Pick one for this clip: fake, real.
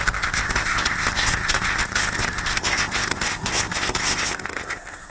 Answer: fake